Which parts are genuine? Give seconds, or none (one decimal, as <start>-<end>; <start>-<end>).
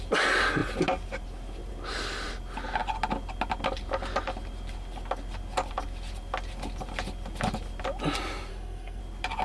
0.0-8.5; 9.0-9.4